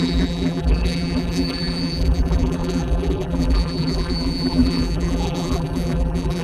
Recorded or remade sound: remade